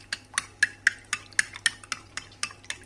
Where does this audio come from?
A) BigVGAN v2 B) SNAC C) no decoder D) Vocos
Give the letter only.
C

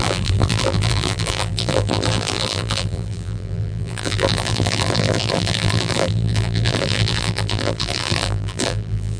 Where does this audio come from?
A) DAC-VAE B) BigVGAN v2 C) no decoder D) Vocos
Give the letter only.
B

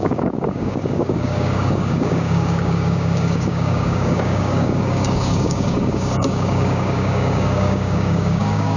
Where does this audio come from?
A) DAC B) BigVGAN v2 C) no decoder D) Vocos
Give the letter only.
A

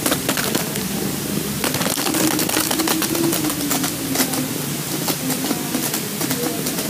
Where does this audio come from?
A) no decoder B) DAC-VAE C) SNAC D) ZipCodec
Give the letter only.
A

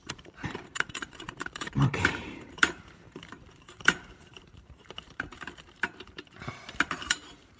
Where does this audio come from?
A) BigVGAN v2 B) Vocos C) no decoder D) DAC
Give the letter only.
A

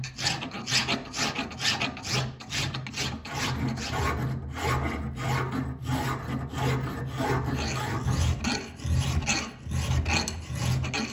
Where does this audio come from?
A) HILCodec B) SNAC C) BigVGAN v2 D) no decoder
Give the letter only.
D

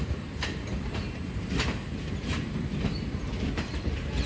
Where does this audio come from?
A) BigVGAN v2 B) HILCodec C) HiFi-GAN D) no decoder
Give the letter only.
A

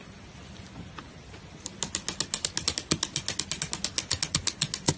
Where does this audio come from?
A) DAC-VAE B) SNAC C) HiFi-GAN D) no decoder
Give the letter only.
D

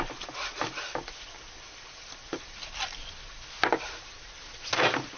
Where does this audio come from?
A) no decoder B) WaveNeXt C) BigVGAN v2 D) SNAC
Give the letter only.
A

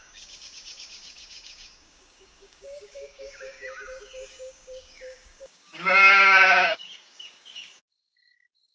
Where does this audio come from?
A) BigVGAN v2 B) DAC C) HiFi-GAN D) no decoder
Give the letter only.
B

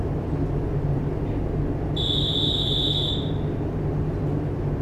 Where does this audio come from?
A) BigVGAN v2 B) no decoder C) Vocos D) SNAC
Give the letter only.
B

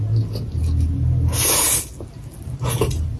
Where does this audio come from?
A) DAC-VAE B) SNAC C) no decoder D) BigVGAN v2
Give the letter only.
C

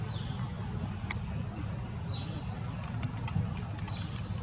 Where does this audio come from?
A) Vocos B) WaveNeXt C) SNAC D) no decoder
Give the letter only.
D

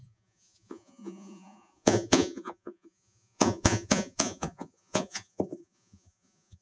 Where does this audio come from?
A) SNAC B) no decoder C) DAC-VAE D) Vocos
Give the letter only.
D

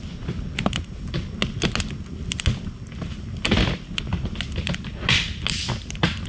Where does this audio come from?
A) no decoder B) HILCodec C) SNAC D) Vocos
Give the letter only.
A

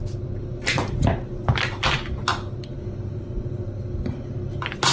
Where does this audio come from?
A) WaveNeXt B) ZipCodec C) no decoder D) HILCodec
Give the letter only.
C